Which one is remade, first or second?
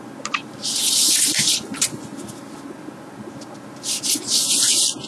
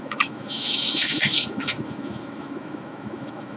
second